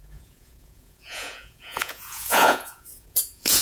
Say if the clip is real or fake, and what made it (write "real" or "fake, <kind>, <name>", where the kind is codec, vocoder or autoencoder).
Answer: fake, vocoder, Vocos